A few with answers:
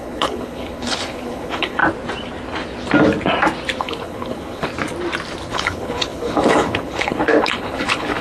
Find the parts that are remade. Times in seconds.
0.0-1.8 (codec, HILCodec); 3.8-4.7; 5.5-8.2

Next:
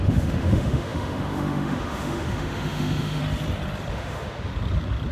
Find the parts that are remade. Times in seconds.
0.0-3.2 (autoencoder, DAC-VAE); 3.9-4.5

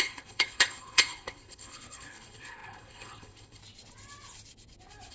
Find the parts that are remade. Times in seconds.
0.0-3.6 (codec, HILCodec)

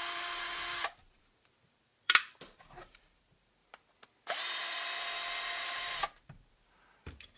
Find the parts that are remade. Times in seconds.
0.0-3.6 (vocoder, BigVGAN v2); 5.6-7.4